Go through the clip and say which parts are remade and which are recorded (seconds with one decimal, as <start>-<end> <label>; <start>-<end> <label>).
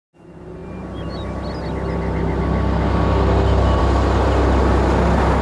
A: 0.0-5.4 recorded